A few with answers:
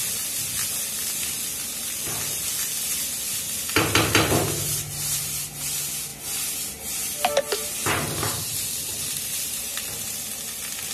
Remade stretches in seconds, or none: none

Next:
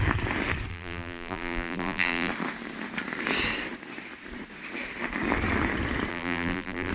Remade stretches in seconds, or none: 0.7-2.3; 6.1-6.9

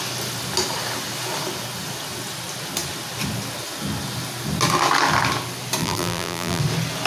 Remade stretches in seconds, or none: 5.8-6.6

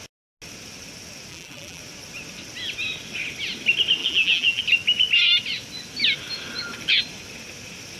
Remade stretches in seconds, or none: 1.3-1.8; 4.0-4.6

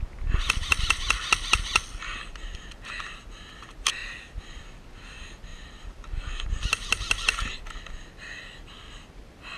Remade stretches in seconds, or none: 4.0-4.6; 5.5-6.1

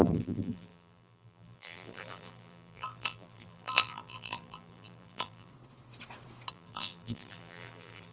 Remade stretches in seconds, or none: 0.0-5.5; 6.5-8.1

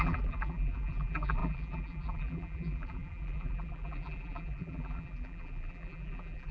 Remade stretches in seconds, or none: 0.0-6.5

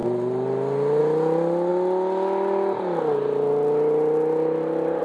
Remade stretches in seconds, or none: none